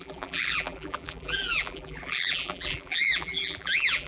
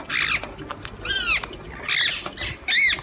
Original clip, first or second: second